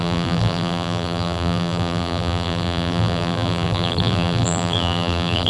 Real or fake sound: fake